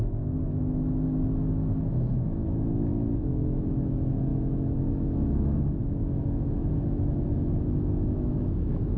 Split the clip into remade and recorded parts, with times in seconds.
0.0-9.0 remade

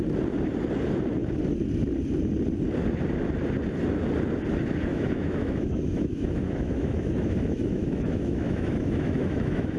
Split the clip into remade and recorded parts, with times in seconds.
0.0-4.9 recorded; 4.9-9.8 remade

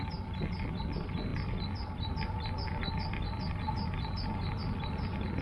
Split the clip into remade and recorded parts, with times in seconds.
0.0-5.4 recorded

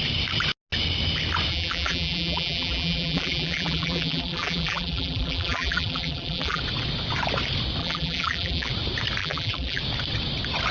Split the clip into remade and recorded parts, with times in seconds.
0.0-1.5 recorded; 1.5-6.6 remade; 6.6-7.8 recorded; 7.8-8.7 remade; 8.7-9.2 recorded; 9.2-9.8 remade; 9.8-10.7 recorded

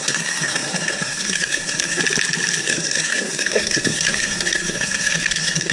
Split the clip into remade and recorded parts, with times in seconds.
0.0-2.0 remade; 2.0-2.6 recorded; 2.6-5.7 remade

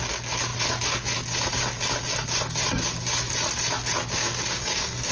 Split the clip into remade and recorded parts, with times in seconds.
0.0-4.2 recorded; 4.2-5.1 remade

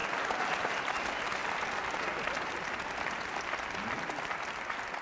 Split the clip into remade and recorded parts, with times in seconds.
0.0-5.0 recorded